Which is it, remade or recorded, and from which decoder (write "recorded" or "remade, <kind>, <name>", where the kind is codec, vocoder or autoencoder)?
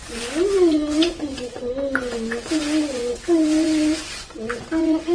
remade, vocoder, Vocos